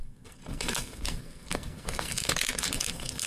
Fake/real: fake